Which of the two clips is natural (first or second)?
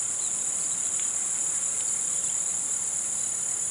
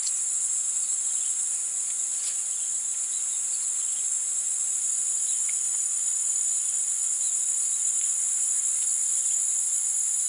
first